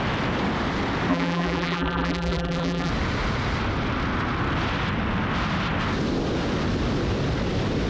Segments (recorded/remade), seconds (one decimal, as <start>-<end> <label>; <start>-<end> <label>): 0.0-1.1 recorded; 1.1-2.9 remade; 2.9-7.9 recorded